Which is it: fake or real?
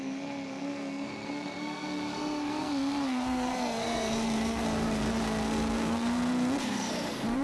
fake